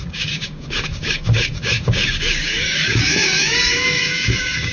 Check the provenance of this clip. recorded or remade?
remade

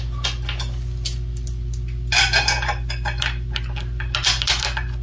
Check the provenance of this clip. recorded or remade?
recorded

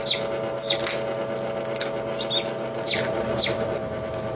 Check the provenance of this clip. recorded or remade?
recorded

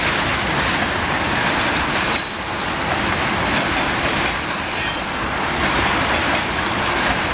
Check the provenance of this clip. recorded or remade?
recorded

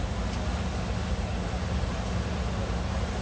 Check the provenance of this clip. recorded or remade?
recorded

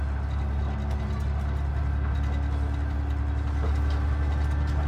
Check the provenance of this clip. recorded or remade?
recorded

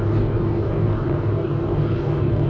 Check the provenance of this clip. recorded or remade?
remade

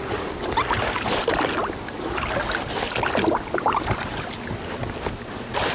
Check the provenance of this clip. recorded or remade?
recorded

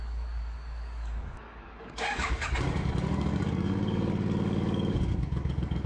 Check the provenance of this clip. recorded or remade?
remade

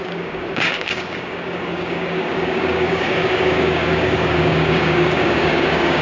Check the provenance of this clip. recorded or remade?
remade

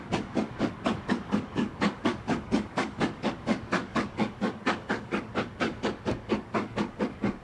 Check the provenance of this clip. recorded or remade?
remade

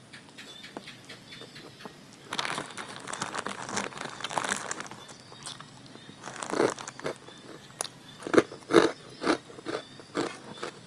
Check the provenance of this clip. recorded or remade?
recorded